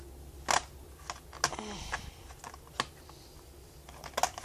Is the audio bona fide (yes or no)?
yes